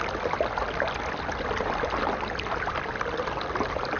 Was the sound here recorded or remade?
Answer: recorded